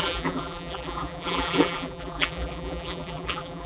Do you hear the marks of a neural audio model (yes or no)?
yes